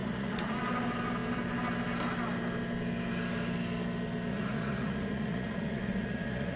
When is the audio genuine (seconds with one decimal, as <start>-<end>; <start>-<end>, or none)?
0.6-4.3